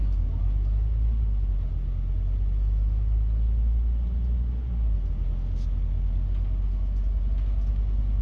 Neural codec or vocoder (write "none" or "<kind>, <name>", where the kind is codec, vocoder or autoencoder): none